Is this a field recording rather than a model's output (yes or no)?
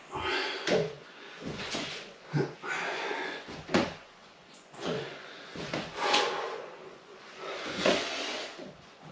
no